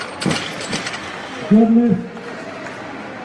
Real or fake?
real